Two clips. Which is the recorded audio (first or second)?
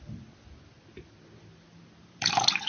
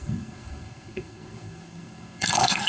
first